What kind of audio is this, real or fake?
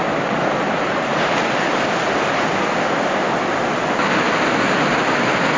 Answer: real